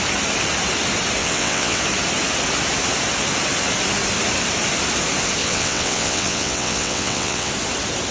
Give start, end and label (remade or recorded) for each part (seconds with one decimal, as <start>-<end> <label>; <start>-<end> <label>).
0.0-1.2 recorded; 1.2-1.8 remade; 1.8-5.4 recorded; 5.4-7.5 remade; 7.5-8.1 recorded